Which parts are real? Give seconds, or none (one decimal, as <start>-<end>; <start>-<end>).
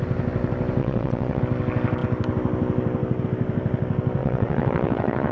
0.0-0.8; 1.4-4.2